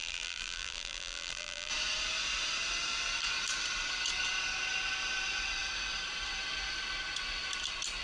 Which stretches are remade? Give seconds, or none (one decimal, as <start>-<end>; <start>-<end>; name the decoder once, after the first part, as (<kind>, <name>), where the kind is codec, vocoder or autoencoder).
0.0-1.7 (vocoder, BigVGAN v2)